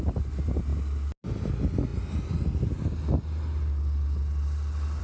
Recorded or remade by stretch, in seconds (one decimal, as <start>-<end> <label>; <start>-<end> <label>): 0.0-5.0 recorded